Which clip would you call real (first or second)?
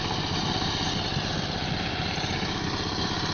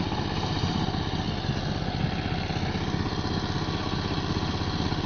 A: second